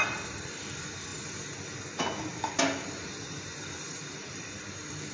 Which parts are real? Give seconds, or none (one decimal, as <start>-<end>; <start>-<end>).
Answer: 0.0-5.1